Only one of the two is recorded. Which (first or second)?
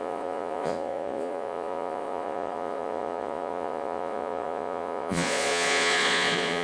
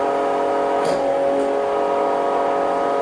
second